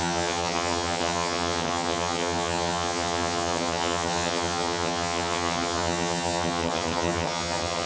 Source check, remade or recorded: remade